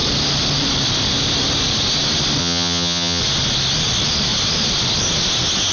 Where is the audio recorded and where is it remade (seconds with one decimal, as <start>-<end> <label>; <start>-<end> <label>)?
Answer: 0.0-2.4 recorded; 2.4-3.2 remade; 3.2-5.7 recorded